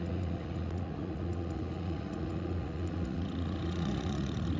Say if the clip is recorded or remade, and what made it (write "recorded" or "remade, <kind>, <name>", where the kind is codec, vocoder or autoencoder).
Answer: remade, vocoder, Vocos